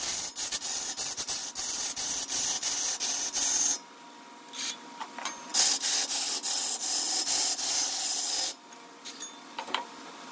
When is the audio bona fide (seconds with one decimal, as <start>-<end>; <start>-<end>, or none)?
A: 0.0-10.3